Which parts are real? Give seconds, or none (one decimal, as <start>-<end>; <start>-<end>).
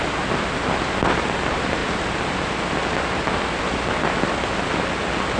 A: 0.0-5.4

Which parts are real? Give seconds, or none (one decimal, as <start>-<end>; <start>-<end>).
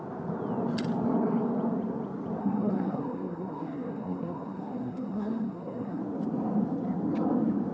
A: 0.0-2.4; 6.0-7.7